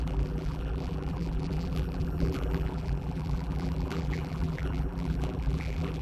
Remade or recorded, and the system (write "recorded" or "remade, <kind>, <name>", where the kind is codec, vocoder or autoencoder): remade, vocoder, BigVGAN v2